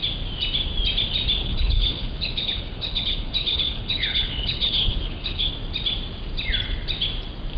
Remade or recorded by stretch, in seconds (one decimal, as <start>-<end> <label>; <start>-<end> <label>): 0.0-1.4 recorded; 1.4-5.5 remade; 5.5-7.6 recorded